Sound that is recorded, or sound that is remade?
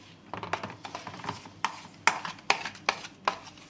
recorded